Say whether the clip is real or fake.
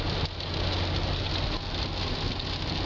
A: real